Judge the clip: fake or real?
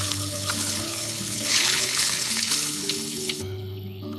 fake